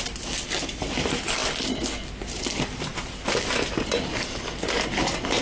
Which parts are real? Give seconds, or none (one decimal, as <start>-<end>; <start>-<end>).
0.0-5.4